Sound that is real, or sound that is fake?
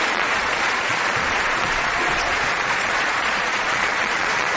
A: fake